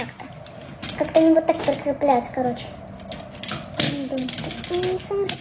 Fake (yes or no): no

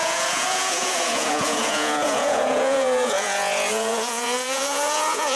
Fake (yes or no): yes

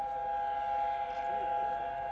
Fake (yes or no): no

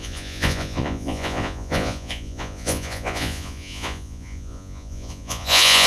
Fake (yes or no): yes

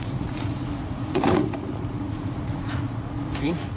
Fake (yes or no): yes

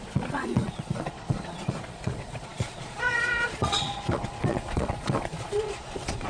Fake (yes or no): yes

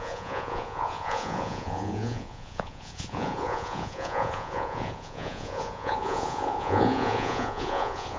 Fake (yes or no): yes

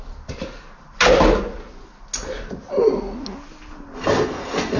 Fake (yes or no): no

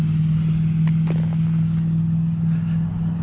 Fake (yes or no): no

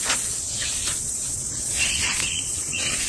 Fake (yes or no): yes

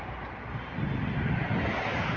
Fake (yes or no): no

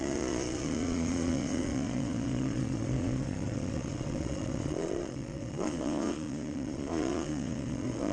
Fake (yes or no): yes